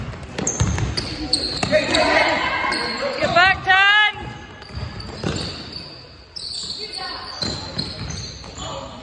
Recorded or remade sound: recorded